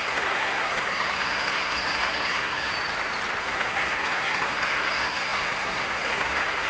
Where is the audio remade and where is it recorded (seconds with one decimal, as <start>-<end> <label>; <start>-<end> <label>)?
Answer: 0.0-2.7 remade; 2.7-3.4 recorded; 3.4-6.7 remade